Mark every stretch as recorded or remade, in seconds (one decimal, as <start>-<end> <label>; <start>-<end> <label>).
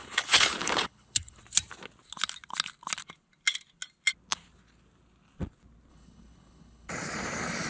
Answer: 0.0-1.4 remade; 1.4-5.9 recorded; 5.9-6.9 remade; 6.9-7.7 recorded